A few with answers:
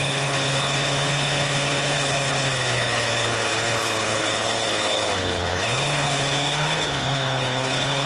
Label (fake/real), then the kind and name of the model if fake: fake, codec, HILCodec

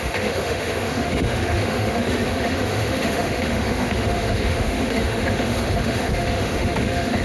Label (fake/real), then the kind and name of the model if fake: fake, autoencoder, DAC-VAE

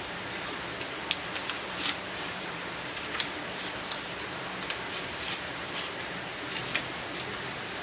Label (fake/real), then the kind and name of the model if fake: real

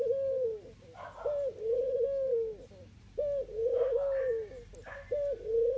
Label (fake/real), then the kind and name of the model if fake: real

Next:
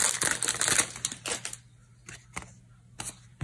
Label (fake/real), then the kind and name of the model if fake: real